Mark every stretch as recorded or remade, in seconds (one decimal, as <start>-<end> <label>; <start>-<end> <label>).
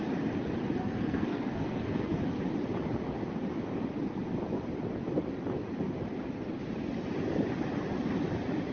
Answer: 0.0-0.8 recorded; 0.8-2.2 remade; 2.2-8.7 recorded